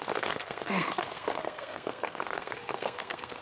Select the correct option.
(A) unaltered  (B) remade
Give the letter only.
B